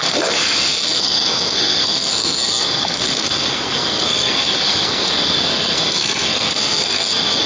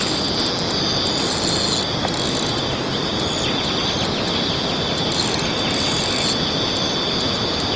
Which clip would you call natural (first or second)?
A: second